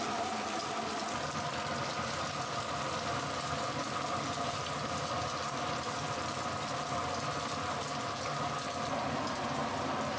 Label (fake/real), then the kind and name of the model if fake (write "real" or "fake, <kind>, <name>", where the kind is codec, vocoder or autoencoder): real